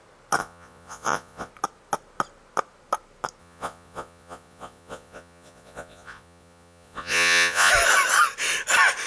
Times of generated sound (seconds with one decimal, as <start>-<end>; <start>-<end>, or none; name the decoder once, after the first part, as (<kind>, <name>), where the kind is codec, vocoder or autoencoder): 0.4-1.5 (vocoder, Vocos); 3.4-7.7